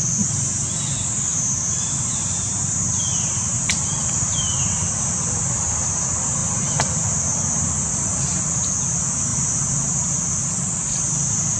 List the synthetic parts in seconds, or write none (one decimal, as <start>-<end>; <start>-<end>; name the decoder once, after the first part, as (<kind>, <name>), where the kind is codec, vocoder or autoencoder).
1.3-4.8 (vocoder, BigVGAN v2)